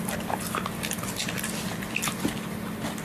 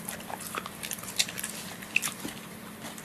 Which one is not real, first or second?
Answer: second